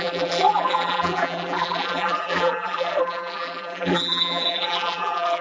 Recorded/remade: remade